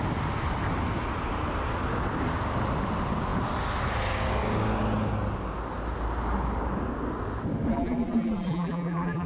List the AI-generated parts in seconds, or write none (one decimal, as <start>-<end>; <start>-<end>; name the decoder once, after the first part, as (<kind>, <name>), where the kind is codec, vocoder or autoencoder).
7.7-9.3 (vocoder, BigVGAN v2)